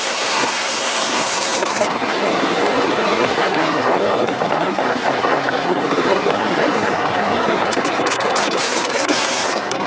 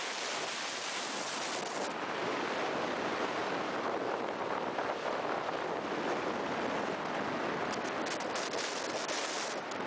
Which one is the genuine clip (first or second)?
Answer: second